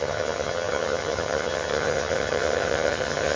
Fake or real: fake